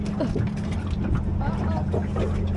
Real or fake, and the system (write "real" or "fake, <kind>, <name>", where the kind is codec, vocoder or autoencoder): real